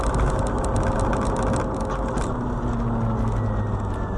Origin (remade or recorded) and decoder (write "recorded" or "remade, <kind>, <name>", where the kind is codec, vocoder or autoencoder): recorded